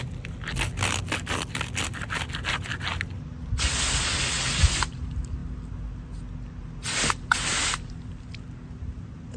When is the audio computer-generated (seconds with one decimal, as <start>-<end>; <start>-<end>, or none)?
none